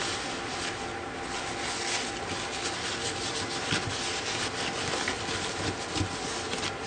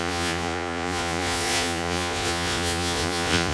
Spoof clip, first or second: second